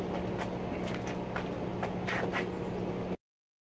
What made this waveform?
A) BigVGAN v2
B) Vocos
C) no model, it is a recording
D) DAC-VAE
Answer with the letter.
C